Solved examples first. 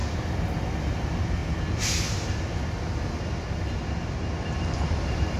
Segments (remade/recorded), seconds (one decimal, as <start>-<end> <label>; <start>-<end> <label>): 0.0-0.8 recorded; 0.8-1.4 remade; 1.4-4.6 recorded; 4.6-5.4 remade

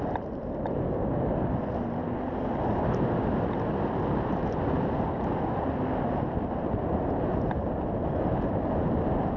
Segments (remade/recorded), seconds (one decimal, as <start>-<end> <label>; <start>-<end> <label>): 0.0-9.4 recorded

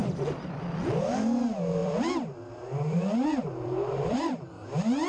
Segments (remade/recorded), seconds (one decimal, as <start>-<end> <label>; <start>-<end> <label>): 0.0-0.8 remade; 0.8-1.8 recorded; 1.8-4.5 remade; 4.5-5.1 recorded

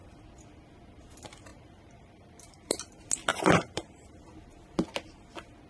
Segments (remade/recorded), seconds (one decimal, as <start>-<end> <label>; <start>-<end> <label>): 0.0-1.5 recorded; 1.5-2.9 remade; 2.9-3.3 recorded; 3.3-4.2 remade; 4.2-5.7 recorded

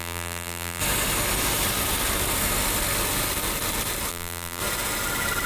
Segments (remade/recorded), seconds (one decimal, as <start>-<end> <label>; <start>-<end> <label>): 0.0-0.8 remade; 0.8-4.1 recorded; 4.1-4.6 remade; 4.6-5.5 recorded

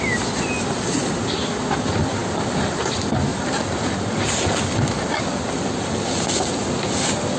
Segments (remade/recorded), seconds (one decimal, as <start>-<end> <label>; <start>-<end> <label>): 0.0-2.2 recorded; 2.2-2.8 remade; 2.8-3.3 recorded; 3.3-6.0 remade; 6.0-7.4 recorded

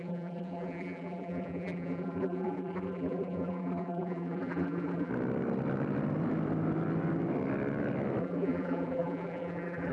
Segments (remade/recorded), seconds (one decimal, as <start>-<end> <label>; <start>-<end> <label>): 0.0-5.1 remade; 5.1-8.2 recorded; 8.2-9.9 remade

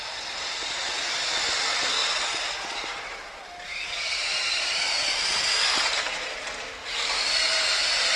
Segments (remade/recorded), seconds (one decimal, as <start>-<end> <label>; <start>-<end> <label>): 0.0-2.0 recorded; 2.0-6.3 remade; 6.3-6.8 recorded; 6.8-8.2 remade